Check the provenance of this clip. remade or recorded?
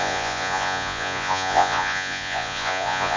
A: remade